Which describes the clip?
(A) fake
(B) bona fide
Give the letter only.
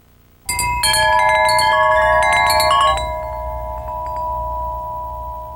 B